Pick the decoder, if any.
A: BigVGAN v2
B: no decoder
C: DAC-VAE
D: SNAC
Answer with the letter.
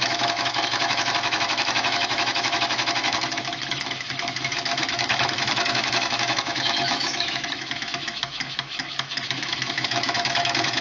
C